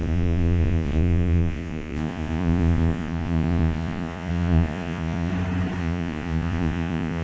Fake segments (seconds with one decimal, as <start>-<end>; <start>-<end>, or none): 0.0-5.3; 5.8-7.2